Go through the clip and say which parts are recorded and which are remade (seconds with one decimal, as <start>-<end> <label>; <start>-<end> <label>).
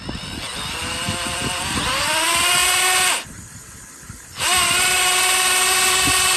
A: 0.0-2.6 recorded; 2.6-6.4 remade